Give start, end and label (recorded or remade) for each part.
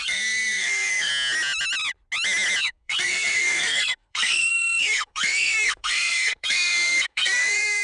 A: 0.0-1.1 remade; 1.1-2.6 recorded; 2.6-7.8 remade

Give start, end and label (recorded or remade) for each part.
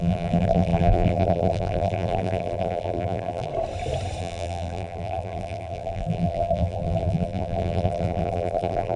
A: 0.0-3.5 remade; 3.5-4.2 recorded; 4.2-9.0 remade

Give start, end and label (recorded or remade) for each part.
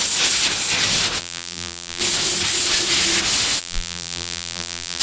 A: 0.0-1.2 recorded; 1.2-2.0 remade; 2.0-3.6 recorded; 3.6-5.0 remade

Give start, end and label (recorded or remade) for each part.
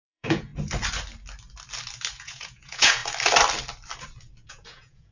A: 0.0-0.5 remade; 0.5-2.2 recorded; 2.2-3.0 remade; 3.0-4.5 recorded; 4.5-5.1 remade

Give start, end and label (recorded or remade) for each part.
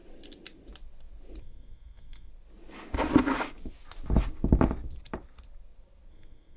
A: 0.0-1.4 recorded; 1.4-2.3 remade; 2.3-6.1 recorded; 6.1-6.6 remade